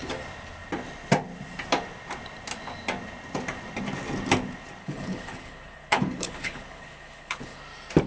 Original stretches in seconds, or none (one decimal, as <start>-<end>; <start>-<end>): 0.0-4.8; 7.6-8.1